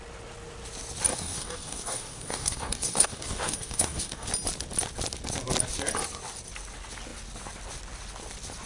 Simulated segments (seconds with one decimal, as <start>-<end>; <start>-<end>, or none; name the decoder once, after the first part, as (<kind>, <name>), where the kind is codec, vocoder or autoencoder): 1.1-4.3 (codec, DAC)